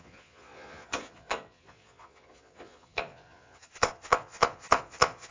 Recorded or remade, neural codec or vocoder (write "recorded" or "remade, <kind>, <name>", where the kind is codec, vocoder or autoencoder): remade, vocoder, Vocos